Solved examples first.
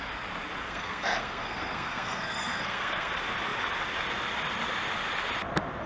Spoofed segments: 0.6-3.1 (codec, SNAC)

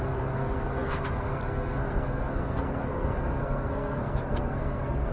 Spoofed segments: 0.0-5.1 (codec, SNAC)

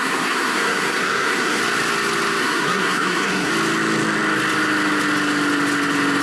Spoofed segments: 0.0-1.6 (codec, SNAC); 2.4-3.5

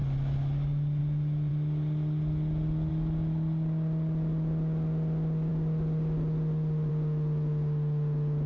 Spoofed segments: none